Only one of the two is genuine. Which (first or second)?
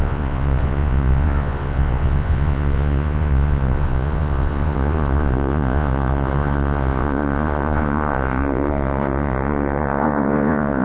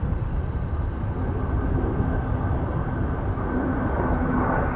second